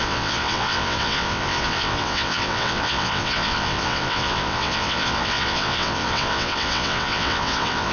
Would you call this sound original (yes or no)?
no